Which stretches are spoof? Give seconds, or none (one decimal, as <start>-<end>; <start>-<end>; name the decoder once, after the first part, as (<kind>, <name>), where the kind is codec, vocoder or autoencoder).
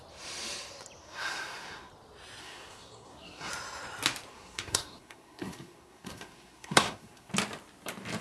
1.0-1.9 (codec, SNAC); 2.4-3.5; 4.3-7.3